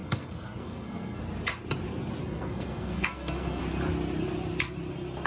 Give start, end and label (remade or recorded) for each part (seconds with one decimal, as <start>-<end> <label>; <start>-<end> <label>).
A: 0.0-1.2 remade; 1.2-2.2 recorded; 2.2-3.6 remade; 3.6-5.3 recorded